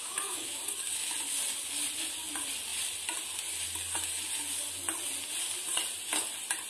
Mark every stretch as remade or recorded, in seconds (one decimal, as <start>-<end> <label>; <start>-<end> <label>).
0.0-0.6 remade; 0.6-6.7 recorded